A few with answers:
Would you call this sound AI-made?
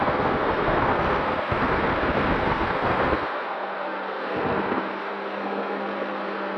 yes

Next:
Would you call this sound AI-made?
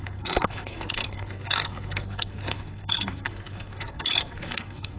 yes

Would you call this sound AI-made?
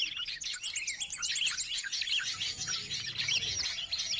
no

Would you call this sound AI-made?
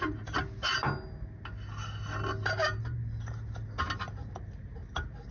no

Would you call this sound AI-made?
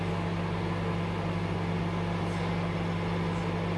no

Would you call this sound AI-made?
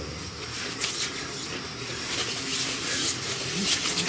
no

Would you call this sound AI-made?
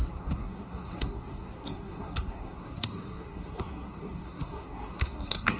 yes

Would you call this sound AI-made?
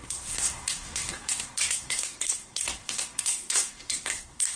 yes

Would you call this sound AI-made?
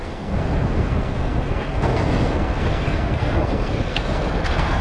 yes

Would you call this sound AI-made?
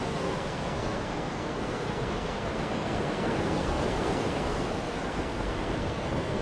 yes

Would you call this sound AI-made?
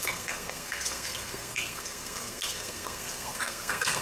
yes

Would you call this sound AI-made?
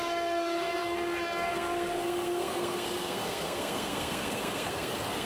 yes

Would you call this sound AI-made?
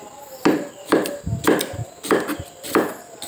no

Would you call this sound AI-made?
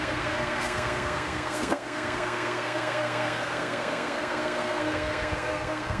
yes